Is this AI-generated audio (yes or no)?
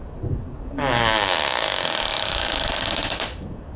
yes